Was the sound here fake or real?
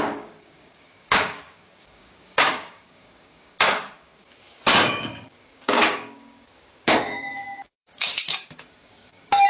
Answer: fake